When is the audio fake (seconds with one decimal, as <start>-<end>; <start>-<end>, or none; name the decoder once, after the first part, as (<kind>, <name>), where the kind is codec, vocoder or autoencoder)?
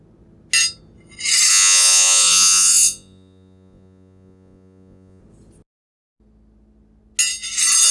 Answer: 1.5-5.2 (vocoder, Vocos)